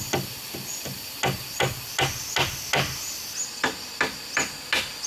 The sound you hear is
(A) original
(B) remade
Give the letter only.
A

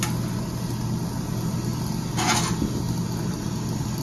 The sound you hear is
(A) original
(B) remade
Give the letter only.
A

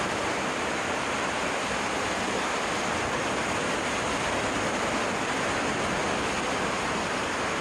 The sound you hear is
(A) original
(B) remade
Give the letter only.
A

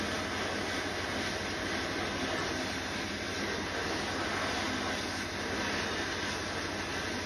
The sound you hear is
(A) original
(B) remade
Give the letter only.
A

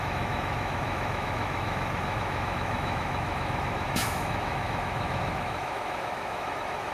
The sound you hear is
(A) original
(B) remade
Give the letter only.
B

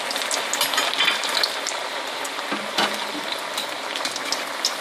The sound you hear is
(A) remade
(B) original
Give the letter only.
B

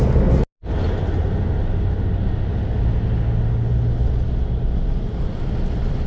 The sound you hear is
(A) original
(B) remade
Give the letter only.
A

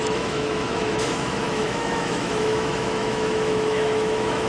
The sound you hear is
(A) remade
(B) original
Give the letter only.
A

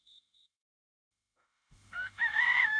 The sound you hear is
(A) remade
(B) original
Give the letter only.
A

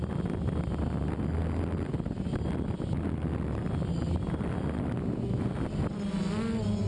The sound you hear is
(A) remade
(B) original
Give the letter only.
B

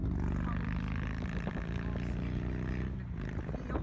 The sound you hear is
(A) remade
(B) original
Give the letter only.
B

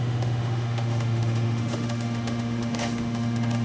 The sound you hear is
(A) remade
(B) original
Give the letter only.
A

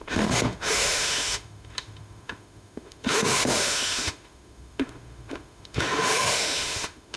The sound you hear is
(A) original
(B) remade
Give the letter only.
B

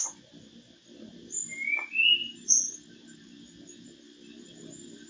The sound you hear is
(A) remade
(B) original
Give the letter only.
B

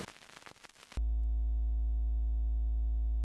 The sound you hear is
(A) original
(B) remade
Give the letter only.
A